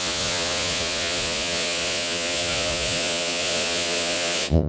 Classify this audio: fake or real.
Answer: fake